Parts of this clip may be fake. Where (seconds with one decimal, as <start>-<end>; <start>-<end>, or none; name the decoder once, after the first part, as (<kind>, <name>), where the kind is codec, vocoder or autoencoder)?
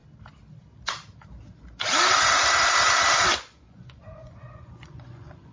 3.3-5.5 (vocoder, Vocos)